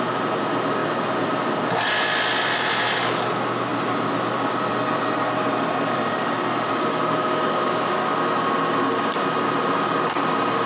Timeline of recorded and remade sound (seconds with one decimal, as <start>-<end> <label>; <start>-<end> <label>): 0.0-0.8 recorded; 0.8-1.5 remade; 1.5-3.7 recorded; 3.7-7.0 remade; 7.0-10.7 recorded